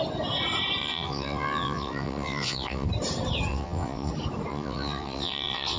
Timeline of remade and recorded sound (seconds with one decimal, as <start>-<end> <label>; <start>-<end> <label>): 0.0-0.8 recorded; 0.8-2.9 remade; 2.9-3.5 recorded; 3.5-4.1 remade; 4.1-4.5 recorded; 4.5-5.8 remade